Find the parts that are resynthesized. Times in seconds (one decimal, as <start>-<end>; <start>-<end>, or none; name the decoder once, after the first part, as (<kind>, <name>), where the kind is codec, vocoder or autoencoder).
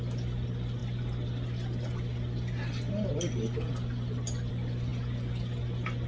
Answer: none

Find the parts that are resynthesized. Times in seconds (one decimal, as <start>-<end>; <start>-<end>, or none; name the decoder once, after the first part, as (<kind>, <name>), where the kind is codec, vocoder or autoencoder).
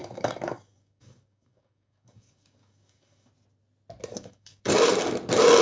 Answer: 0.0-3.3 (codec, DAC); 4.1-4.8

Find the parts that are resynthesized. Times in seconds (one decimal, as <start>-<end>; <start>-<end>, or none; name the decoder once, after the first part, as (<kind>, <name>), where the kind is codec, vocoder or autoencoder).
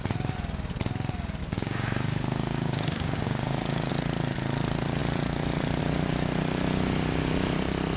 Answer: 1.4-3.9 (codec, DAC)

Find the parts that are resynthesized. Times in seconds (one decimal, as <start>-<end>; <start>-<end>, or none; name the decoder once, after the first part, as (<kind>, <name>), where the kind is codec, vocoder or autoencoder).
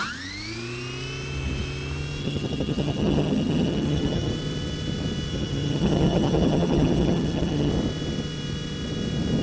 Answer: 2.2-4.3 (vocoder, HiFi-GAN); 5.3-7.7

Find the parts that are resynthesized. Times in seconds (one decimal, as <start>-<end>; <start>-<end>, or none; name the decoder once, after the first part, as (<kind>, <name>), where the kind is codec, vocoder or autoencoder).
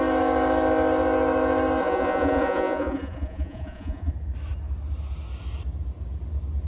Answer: 1.8-4.1 (vocoder, Vocos)